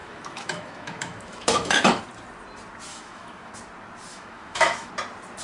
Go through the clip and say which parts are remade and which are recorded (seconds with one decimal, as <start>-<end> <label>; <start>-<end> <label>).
0.0-2.0 remade; 2.0-2.9 recorded; 2.9-3.5 remade; 3.5-4.1 recorded; 4.1-4.9 remade; 4.9-5.4 recorded